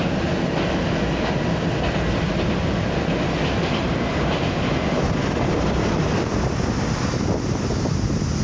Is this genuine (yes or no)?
yes